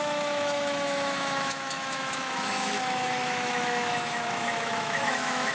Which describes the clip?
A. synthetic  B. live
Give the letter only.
A